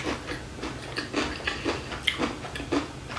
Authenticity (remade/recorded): recorded